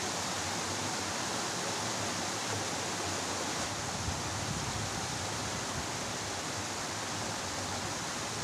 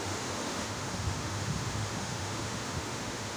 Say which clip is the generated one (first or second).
second